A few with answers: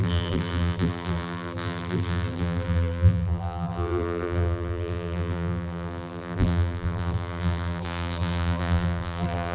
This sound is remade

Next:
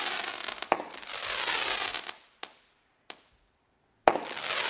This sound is recorded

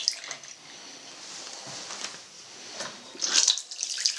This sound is recorded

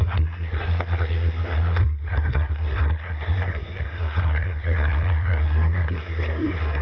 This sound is remade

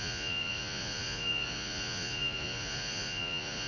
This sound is remade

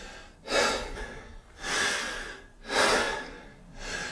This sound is recorded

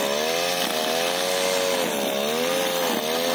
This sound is recorded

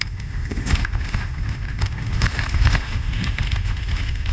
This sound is remade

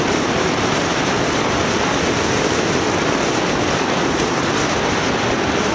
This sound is remade